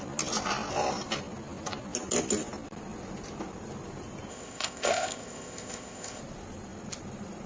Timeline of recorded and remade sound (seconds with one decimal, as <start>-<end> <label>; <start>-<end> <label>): 0.0-4.3 recorded; 4.3-6.2 remade; 6.2-7.5 recorded